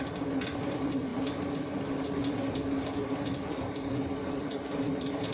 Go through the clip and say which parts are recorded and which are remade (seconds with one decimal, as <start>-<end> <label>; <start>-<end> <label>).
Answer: 0.0-5.3 remade